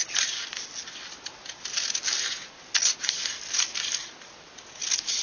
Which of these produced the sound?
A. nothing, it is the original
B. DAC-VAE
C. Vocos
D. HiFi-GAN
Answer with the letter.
A